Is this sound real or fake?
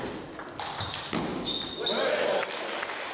real